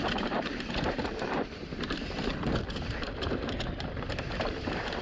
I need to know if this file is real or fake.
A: fake